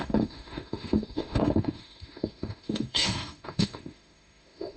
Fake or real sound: fake